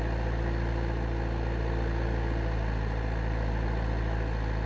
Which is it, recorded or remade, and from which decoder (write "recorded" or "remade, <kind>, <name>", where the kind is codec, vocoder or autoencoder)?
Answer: recorded